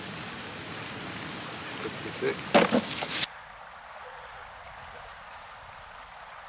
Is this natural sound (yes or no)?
yes